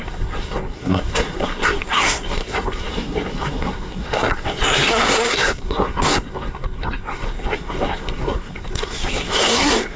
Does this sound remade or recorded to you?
remade